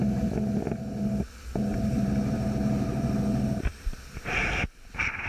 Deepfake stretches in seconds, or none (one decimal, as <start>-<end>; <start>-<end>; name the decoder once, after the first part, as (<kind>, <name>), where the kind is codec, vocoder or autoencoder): 1.7-3.2 (vocoder, BigVGAN v2)